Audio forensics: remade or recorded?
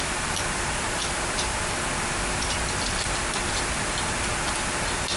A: recorded